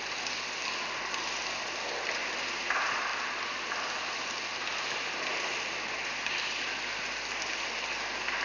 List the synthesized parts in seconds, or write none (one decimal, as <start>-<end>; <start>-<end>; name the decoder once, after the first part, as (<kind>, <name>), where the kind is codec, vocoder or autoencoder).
none